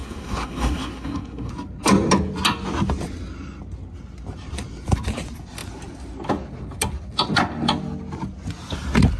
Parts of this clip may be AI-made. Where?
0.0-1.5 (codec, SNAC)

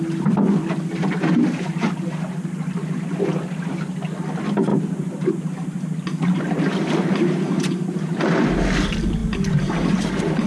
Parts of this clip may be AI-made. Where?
none

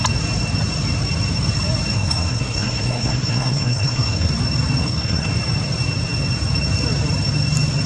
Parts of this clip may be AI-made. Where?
1.9-4.3 (codec, SNAC); 4.8-5.3

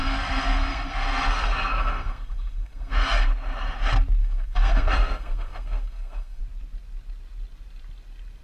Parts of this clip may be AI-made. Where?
0.0-3.2 (codec, SNAC); 4.2-6.4